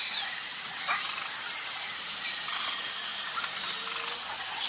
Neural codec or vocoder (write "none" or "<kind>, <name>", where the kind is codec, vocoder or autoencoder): none